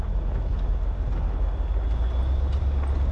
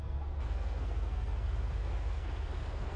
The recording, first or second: first